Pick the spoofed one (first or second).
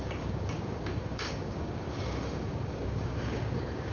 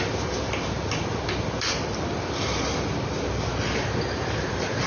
first